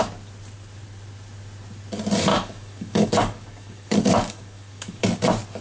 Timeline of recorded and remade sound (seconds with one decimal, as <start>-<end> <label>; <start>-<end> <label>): 0.0-2.3 recorded; 2.3-5.0 remade; 5.0-5.6 recorded